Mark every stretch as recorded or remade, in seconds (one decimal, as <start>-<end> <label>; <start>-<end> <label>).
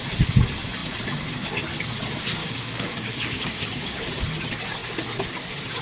0.0-2.4 recorded; 2.4-4.0 remade; 4.0-5.8 recorded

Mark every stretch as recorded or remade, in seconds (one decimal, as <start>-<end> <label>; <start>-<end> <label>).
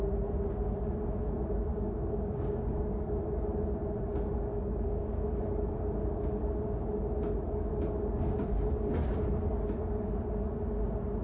0.0-1.7 recorded; 1.7-3.2 remade; 3.2-4.5 recorded; 4.5-5.3 remade; 5.3-7.7 recorded; 7.7-9.2 remade; 9.2-11.2 recorded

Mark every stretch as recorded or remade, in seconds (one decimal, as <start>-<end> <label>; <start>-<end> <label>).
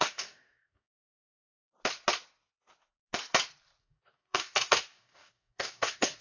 0.0-1.7 remade; 1.7-3.8 recorded; 3.8-6.2 remade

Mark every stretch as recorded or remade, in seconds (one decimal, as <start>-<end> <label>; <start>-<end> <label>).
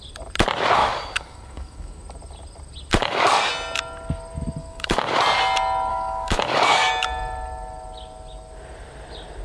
0.0-0.8 recorded; 0.8-2.0 remade; 2.0-3.0 recorded; 3.0-3.5 remade; 3.5-4.6 recorded; 4.6-5.2 remade; 5.2-5.9 recorded; 5.9-6.9 remade; 6.9-9.4 recorded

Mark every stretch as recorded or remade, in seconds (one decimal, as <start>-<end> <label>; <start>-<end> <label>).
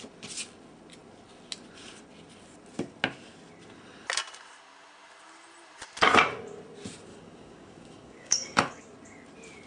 0.0-7.1 recorded; 7.1-8.8 remade; 8.8-9.7 recorded